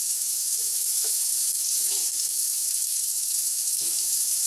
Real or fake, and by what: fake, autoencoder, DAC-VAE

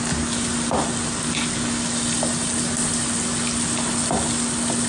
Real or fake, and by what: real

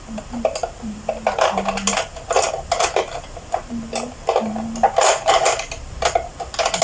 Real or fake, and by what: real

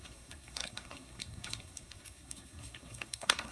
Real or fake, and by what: fake, codec, SNAC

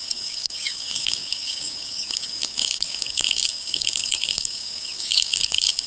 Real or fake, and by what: fake, codec, DAC